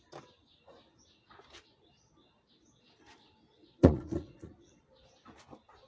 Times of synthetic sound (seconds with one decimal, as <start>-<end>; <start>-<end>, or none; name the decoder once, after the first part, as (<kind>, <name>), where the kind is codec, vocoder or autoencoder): 3.6-4.8 (vocoder, Vocos)